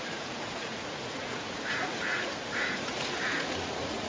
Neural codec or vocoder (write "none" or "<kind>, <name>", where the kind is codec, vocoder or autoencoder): vocoder, Vocos